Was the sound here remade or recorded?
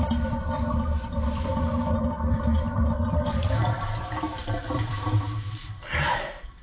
remade